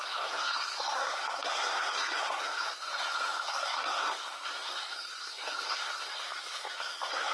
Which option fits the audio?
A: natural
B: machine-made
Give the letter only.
B